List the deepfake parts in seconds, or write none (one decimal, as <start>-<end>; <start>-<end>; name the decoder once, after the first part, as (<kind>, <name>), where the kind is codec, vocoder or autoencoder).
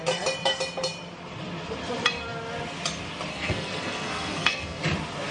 3.3-4.8 (codec, SNAC)